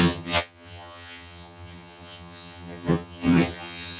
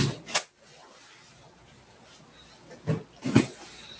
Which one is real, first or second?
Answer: second